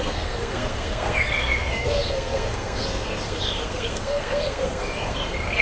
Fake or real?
fake